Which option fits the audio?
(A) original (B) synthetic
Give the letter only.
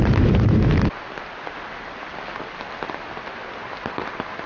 A